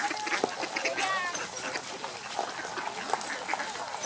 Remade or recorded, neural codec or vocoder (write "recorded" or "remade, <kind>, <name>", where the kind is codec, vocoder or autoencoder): recorded